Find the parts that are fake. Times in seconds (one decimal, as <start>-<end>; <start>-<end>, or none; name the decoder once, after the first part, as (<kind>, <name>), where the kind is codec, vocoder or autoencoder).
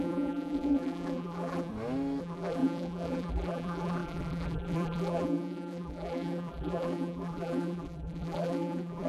0.0-1.7 (vocoder, BigVGAN v2); 2.2-9.1